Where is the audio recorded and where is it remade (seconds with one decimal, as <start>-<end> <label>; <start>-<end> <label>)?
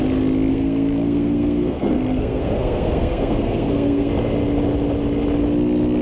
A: 0.0-0.5 recorded; 0.5-4.1 remade; 4.1-6.0 recorded